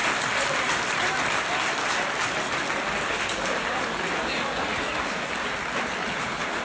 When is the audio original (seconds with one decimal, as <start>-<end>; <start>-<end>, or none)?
0.0-6.0